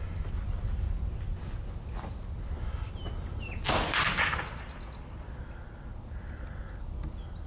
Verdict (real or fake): real